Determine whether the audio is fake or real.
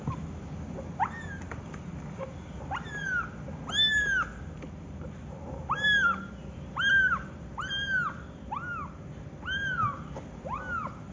real